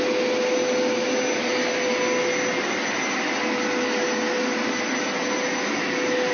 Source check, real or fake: real